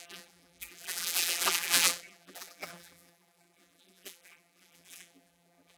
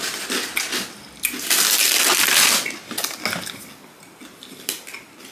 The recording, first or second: second